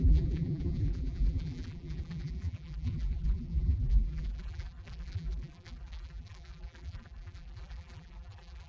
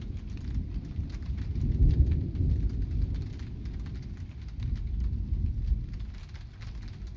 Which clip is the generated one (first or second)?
first